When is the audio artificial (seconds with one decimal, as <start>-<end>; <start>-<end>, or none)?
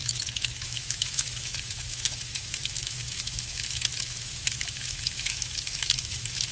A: 0.0-6.5